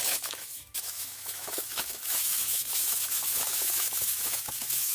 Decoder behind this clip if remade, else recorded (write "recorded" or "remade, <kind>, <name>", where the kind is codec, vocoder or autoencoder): remade, autoencoder, DAC-VAE